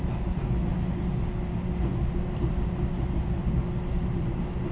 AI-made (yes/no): no